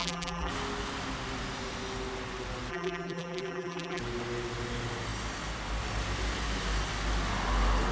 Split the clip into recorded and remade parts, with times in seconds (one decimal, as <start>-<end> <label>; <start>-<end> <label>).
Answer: 0.0-0.5 remade; 0.5-2.7 recorded; 2.7-4.0 remade; 4.0-7.9 recorded